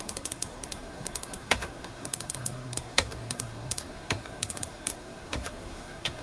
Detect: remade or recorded remade